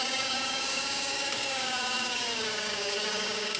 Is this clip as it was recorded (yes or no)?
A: no